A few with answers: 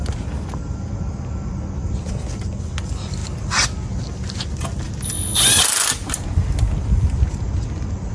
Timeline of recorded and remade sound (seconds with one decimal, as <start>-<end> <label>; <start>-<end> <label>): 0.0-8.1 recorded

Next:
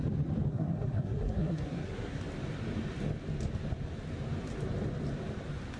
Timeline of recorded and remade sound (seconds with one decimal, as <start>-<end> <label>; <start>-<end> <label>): 0.0-0.5 recorded; 0.5-2.2 remade; 2.2-5.8 recorded

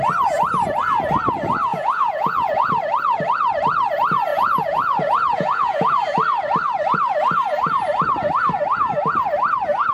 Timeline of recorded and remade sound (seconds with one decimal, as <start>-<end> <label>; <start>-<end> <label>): 0.0-1.7 recorded; 1.7-2.7 remade; 2.7-4.3 recorded; 4.3-5.9 remade; 5.9-9.9 recorded

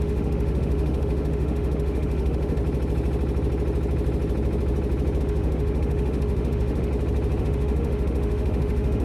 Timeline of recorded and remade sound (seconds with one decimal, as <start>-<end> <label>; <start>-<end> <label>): 0.0-2.6 remade; 2.6-5.2 recorded; 5.2-6.9 remade; 6.9-7.4 recorded; 7.4-9.0 remade